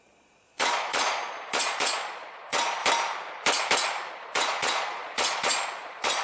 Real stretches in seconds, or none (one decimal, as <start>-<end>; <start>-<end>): 2.8-4.1